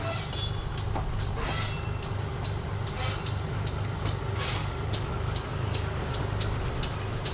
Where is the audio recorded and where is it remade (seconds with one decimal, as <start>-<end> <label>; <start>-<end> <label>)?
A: 0.0-4.6 recorded; 4.6-6.2 remade; 6.2-7.3 recorded